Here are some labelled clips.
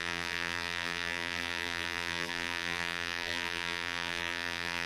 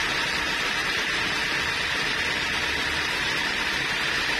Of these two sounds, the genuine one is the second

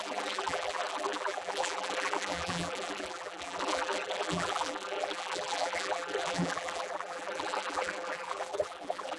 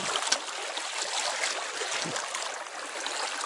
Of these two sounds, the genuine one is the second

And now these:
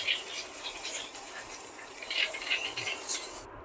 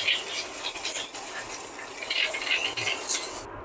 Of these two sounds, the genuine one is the second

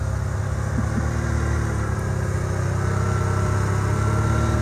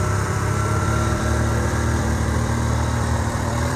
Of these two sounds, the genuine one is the first